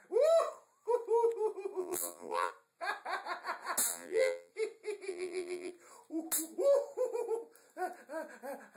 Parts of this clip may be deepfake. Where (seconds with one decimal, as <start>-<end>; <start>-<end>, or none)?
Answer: 1.8-2.5; 3.9-4.5; 5.1-5.7